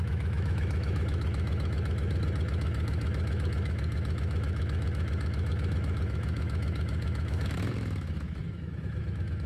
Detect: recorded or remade remade